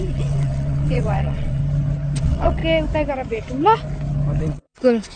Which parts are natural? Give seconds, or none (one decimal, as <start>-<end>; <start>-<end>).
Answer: 1.6-2.2; 2.6-4.4